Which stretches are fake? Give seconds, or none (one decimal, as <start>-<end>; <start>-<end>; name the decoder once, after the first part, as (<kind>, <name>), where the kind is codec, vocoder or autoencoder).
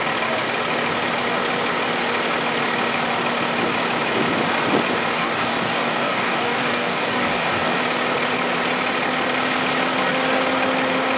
5.2-7.8 (codec, DAC)